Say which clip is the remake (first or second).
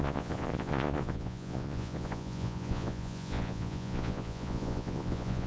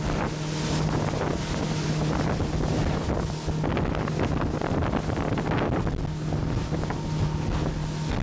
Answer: first